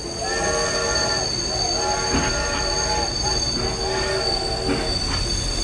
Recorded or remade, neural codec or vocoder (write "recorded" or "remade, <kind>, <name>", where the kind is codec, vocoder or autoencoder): recorded